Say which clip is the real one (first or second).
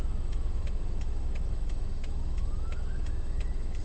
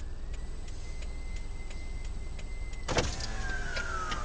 second